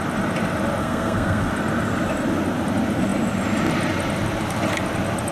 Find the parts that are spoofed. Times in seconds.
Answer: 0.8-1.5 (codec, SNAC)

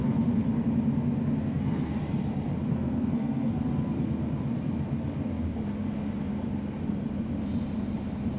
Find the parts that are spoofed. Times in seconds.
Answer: 0.0-0.4 (codec, SNAC); 1.4-1.9; 2.7-3.5

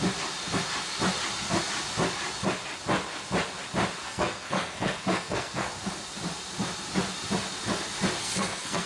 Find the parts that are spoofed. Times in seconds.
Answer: 4.0-5.7 (codec, SNAC); 8.2-8.9